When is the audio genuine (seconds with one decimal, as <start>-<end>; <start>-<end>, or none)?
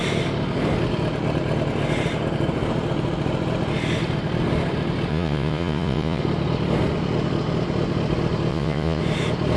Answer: 0.0-5.1; 6.2-8.5; 9.0-9.6